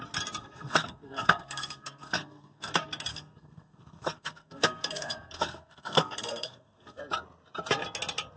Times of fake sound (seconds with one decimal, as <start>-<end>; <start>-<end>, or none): 0.4-2.7; 3.1-7.0